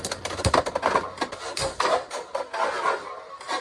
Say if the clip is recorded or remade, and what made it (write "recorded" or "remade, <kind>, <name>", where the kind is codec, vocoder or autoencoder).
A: recorded